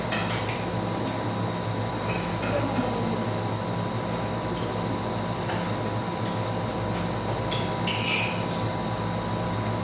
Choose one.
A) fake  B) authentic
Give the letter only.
B